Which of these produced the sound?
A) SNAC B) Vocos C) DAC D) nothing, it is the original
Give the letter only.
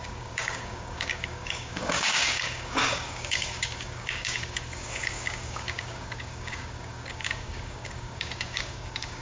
C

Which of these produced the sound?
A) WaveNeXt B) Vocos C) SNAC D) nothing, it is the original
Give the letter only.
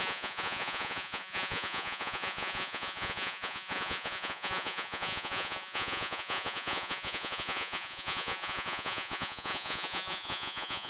B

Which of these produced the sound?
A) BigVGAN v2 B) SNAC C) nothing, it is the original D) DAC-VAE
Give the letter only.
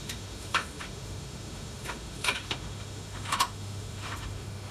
D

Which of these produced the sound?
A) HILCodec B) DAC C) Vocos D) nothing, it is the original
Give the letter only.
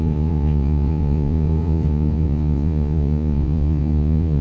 C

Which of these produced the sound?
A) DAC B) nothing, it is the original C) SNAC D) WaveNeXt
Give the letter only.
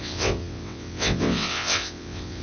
D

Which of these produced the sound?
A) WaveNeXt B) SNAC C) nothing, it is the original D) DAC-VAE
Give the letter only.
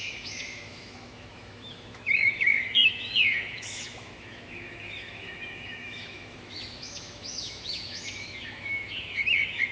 D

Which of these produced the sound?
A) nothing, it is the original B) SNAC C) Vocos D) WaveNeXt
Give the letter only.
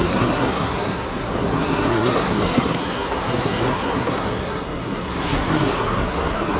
B